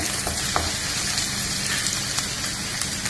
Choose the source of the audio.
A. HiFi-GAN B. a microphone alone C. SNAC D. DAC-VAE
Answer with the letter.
B